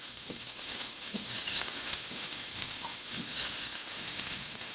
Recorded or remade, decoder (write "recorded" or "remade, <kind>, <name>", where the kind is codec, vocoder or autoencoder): remade, autoencoder, DAC-VAE